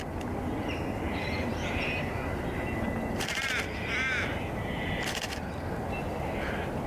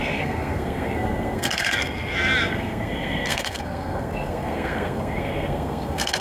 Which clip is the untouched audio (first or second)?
first